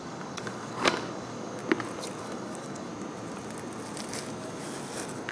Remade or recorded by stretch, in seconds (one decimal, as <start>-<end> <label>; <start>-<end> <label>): 0.0-1.6 remade; 1.6-2.2 recorded; 2.2-2.9 remade; 2.9-5.3 recorded